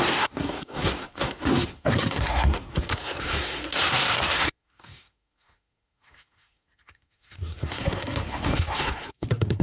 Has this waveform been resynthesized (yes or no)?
yes